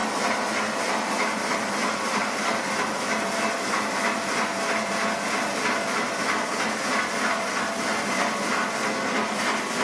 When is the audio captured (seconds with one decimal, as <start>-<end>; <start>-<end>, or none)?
0.0-2.2; 2.8-9.8